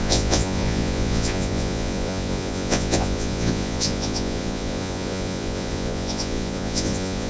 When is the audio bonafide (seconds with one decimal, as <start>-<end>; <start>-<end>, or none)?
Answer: none